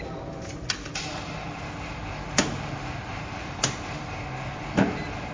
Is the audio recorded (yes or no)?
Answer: no